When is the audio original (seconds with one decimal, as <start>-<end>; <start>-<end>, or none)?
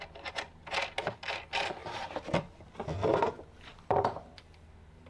0.0-1.8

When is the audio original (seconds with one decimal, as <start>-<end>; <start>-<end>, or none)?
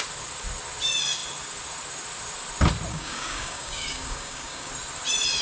0.0-2.9; 4.7-5.4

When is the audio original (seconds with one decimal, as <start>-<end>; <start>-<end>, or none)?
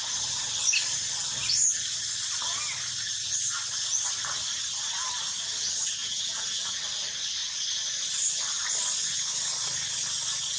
0.0-6.0; 6.8-10.6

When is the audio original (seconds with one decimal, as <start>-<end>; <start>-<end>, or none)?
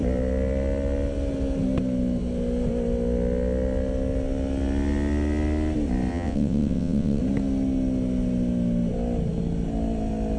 0.0-6.1; 7.2-10.4